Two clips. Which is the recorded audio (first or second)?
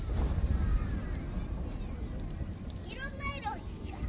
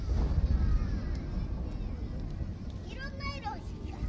second